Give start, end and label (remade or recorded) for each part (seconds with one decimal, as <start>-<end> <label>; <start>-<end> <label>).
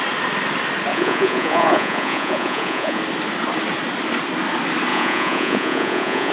0.0-0.9 recorded; 0.9-3.0 remade; 3.0-4.9 recorded; 4.9-6.3 remade